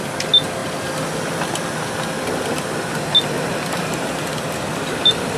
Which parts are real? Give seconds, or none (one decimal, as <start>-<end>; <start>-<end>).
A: 0.0-5.4